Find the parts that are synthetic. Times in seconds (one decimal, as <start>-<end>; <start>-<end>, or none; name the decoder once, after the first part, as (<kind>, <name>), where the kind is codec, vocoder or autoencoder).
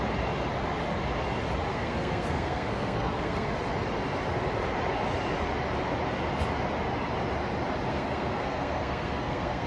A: 1.7-3.5 (codec, SNAC); 7.9-9.7